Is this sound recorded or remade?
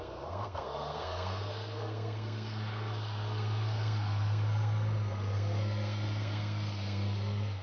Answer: remade